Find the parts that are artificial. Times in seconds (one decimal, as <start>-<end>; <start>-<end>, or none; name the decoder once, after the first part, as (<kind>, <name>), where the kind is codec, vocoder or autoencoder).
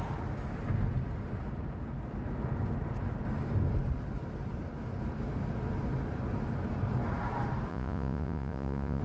7.7-9.0 (vocoder, Vocos)